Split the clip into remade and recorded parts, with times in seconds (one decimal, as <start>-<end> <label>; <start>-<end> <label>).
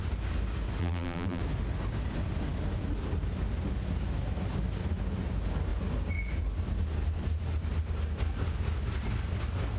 0.0-0.8 recorded; 0.8-1.4 remade; 1.4-9.8 recorded